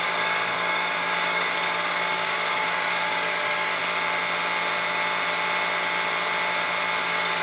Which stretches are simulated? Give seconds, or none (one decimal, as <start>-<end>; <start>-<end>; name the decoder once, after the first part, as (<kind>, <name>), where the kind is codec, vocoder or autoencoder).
0.0-3.8 (codec, DAC); 7.0-7.4